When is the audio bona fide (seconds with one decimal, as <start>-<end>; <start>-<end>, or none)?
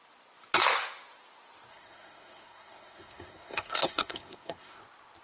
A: 0.0-1.7; 4.8-5.2